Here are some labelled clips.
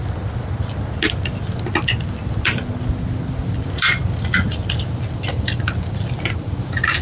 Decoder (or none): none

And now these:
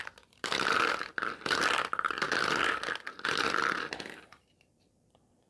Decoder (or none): vocoder, BigVGAN v2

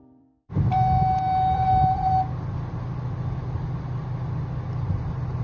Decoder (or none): vocoder, BigVGAN v2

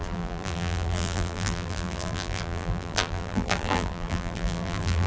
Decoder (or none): vocoder, BigVGAN v2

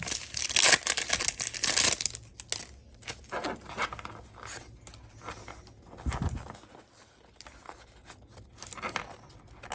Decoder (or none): none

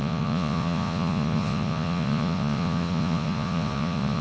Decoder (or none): vocoder, Vocos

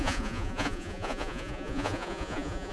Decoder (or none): vocoder, Vocos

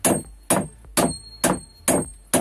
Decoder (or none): none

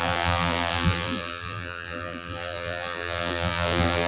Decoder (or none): vocoder, BigVGAN v2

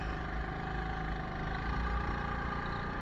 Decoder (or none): none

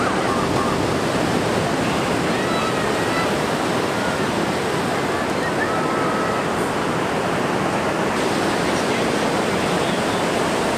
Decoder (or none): none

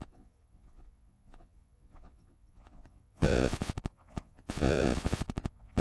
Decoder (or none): vocoder, Vocos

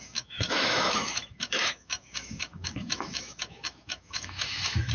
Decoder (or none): autoencoder, DAC-VAE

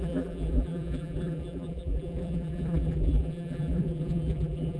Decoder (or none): vocoder, BigVGAN v2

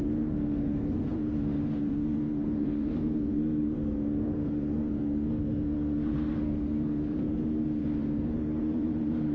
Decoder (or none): codec, SNAC